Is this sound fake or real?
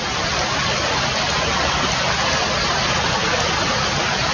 real